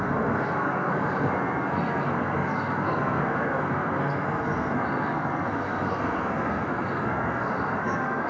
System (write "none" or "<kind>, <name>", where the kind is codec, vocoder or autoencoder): codec, SNAC